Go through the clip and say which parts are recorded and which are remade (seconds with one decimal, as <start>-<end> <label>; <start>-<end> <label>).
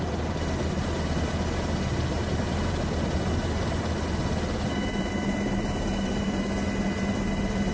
0.0-1.9 recorded; 1.9-3.2 remade; 3.2-7.7 recorded